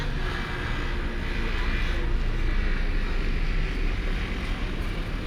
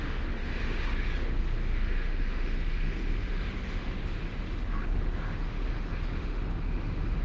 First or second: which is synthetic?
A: second